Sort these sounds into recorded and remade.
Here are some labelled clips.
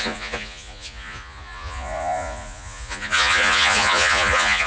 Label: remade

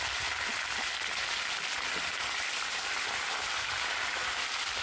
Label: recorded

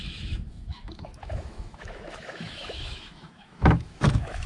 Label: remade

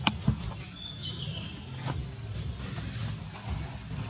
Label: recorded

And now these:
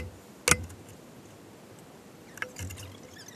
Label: recorded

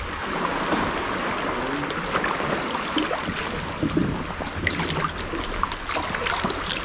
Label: recorded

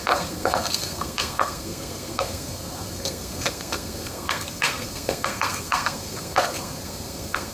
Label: remade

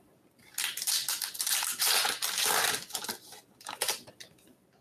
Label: recorded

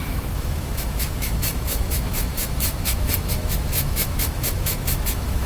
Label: remade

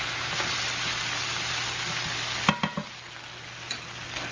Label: recorded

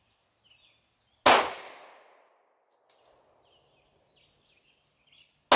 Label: recorded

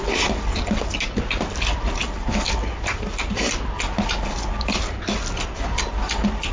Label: recorded